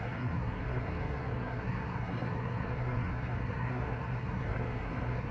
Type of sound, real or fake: fake